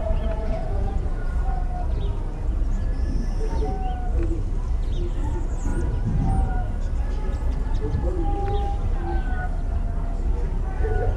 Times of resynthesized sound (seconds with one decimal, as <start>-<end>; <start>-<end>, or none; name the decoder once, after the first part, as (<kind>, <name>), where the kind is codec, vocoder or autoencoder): 0.0-1.3 (vocoder, Vocos)

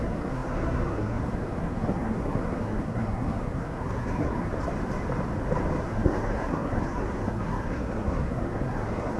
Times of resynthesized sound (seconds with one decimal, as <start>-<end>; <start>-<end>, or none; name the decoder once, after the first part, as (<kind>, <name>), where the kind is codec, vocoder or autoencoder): 0.0-4.5 (codec, SNAC); 5.8-9.2